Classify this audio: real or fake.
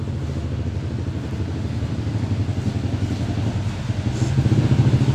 real